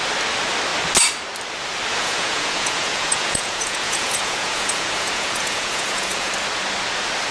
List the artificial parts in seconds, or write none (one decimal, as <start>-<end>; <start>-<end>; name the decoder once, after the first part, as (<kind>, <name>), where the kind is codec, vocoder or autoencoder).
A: 1.9-6.3 (vocoder, Vocos)